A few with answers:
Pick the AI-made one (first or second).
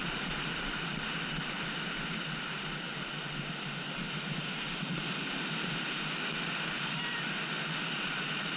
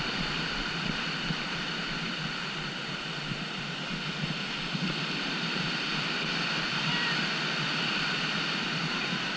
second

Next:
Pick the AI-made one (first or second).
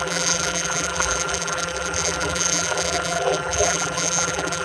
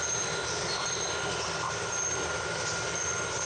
first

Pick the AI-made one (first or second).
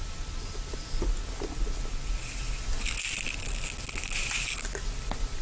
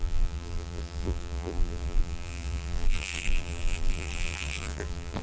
second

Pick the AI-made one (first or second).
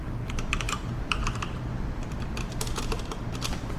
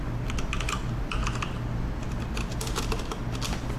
first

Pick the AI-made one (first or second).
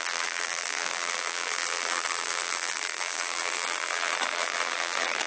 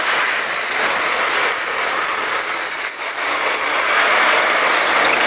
first